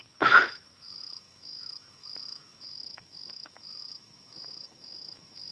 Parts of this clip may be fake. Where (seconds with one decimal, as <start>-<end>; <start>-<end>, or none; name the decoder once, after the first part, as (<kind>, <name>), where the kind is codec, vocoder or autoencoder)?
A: 0.0-5.5 (autoencoder, DAC-VAE)